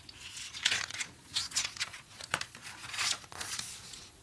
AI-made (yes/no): yes